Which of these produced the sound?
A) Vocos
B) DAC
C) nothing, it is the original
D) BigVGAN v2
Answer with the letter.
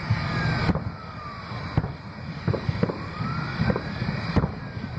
C